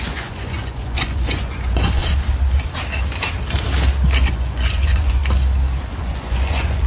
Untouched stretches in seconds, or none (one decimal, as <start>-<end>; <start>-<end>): 2.0-4.3; 5.2-6.0

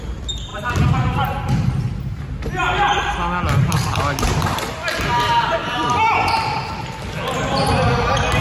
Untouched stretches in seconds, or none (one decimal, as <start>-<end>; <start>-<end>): 0.0-8.4